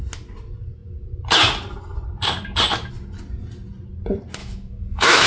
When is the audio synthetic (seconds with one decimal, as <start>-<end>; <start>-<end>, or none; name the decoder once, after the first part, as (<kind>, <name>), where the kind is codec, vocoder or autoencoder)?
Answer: 4.4-5.3 (autoencoder, DAC-VAE)